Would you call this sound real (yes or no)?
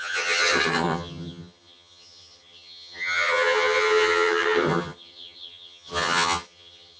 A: no